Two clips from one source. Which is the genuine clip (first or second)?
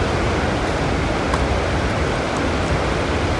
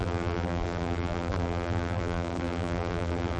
first